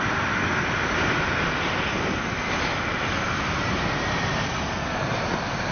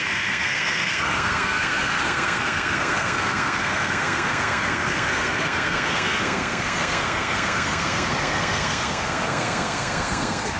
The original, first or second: first